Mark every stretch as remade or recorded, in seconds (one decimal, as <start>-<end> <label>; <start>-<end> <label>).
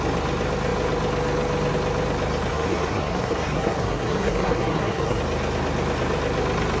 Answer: 0.0-2.5 recorded; 2.5-5.2 remade; 5.2-6.8 recorded